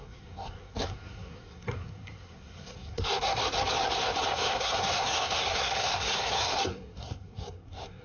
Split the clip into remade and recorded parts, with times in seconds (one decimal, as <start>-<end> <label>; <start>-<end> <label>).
0.0-3.4 remade; 3.4-4.3 recorded; 4.3-8.0 remade